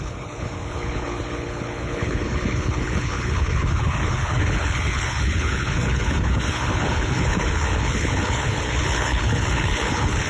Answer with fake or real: fake